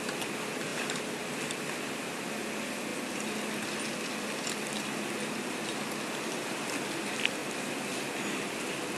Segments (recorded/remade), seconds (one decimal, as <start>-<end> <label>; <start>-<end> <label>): 0.0-0.7 recorded; 0.7-1.4 remade; 1.4-2.9 recorded; 2.9-3.6 remade; 3.6-9.0 recorded